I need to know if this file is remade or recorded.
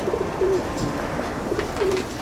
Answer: remade